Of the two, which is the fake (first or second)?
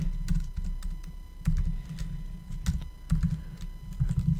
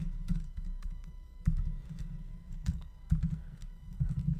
second